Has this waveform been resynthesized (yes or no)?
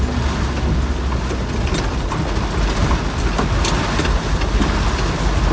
no